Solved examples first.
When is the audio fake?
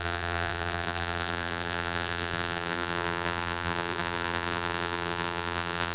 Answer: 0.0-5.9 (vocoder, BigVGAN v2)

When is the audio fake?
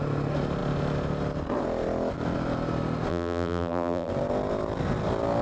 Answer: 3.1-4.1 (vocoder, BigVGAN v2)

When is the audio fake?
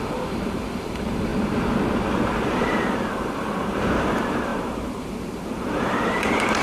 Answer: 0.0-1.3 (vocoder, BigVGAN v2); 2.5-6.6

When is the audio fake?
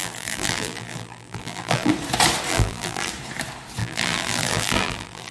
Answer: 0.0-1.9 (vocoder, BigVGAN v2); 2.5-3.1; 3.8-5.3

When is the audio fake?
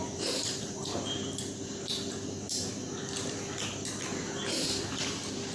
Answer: 0.0-5.5 (vocoder, BigVGAN v2)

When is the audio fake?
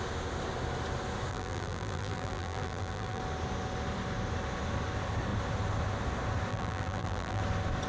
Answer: 1.3-3.2 (vocoder, BigVGAN v2); 6.5-7.4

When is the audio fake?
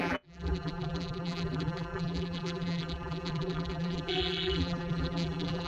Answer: 0.0-5.7 (vocoder, BigVGAN v2)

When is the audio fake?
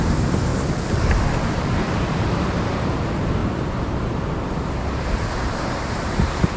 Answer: 0.0-0.5 (vocoder, BigVGAN v2); 2.0-3.4; 5.3-6.6